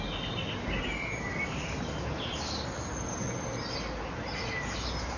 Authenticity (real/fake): real